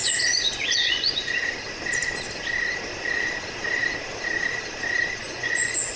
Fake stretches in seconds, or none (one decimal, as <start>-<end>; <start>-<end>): 0.0-1.4; 5.2-6.0